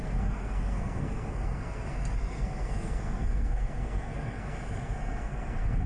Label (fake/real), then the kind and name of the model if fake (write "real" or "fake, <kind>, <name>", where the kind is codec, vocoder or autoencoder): fake, codec, SNAC